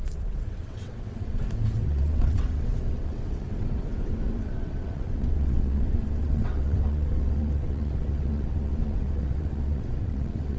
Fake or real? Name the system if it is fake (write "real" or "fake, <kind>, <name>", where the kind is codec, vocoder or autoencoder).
fake, vocoder, WaveNeXt